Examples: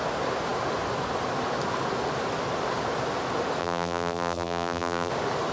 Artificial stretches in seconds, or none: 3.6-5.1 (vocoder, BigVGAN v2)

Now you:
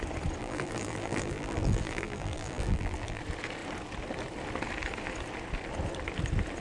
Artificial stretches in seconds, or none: 0.4-3.2 (vocoder, BigVGAN v2)

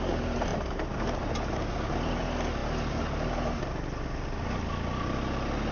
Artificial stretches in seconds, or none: none

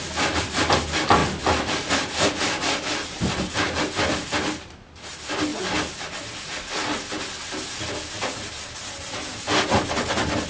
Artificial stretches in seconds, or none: 0.0-5.5 (vocoder, BigVGAN v2); 9.8-10.5